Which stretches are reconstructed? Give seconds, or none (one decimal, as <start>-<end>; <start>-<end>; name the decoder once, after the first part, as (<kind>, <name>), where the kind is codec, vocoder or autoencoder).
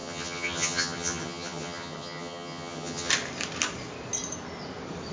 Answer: 0.0-3.1 (vocoder, HiFi-GAN)